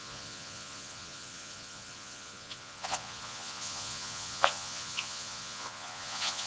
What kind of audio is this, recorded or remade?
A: remade